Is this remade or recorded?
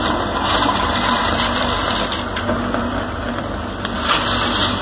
recorded